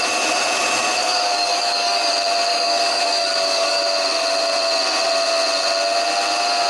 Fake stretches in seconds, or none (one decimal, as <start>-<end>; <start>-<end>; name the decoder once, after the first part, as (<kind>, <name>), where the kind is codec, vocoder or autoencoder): 1.0-2.1 (codec, DAC); 2.5-3.8